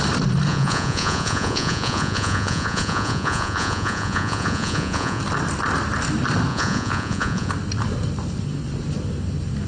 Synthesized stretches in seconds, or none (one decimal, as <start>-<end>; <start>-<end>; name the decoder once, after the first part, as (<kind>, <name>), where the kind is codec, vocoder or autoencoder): 0.5-5.2 (vocoder, Vocos); 6.5-7.5